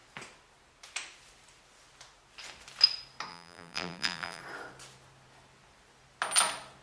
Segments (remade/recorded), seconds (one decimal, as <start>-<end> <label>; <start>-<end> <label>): 0.0-3.3 recorded; 3.3-4.4 remade; 4.4-6.8 recorded